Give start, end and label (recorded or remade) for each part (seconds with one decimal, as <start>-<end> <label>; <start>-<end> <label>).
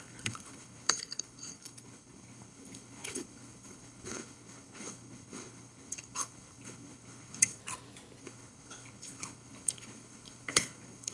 0.0-7.6 remade; 7.6-8.2 recorded; 8.2-11.1 remade